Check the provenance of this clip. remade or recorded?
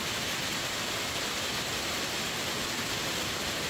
recorded